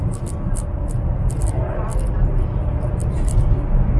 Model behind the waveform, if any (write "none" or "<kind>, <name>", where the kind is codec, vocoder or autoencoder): none